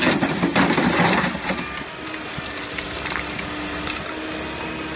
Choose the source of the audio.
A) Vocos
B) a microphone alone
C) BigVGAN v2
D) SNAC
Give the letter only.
B